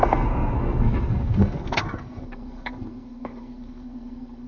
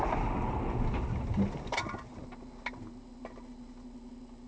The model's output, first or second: first